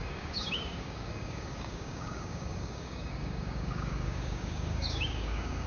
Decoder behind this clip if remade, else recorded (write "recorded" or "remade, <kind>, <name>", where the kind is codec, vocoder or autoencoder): remade, codec, DAC